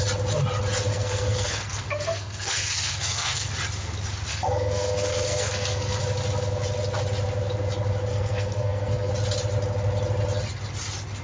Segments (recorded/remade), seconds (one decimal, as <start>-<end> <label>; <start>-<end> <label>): 0.0-0.9 recorded; 0.9-3.5 remade; 3.5-4.3 recorded; 4.3-6.0 remade; 6.0-8.1 recorded; 8.1-9.1 remade; 9.1-11.2 recorded

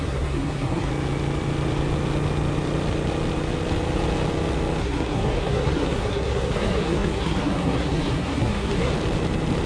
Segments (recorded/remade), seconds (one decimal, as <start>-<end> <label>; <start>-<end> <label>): 0.0-0.9 remade; 0.9-4.8 recorded; 4.8-8.9 remade; 8.9-9.7 recorded